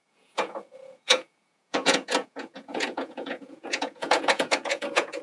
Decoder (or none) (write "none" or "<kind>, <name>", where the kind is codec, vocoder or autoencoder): vocoder, Vocos